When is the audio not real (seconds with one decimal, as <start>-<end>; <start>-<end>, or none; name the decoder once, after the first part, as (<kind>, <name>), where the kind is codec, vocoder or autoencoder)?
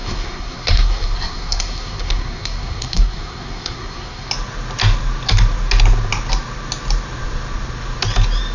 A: 0.0-4.3 (codec, SNAC)